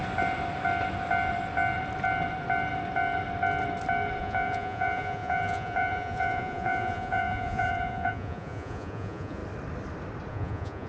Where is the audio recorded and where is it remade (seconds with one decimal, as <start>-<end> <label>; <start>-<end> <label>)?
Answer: 0.0-4.2 recorded; 4.2-9.4 remade; 9.4-10.3 recorded; 10.3-10.9 remade